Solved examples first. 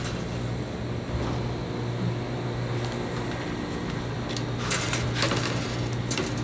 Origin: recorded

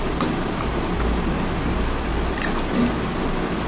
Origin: recorded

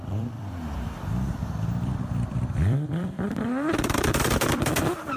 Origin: remade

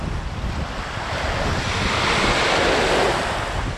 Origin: recorded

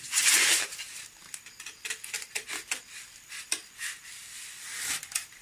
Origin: recorded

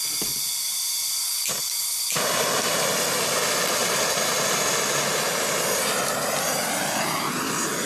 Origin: recorded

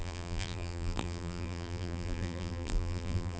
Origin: remade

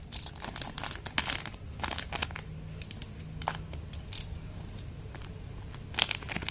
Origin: recorded